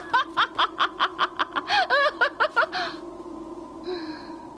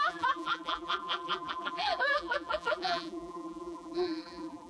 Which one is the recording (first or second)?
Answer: first